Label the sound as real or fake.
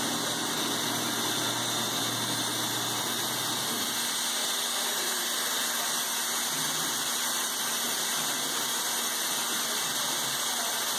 real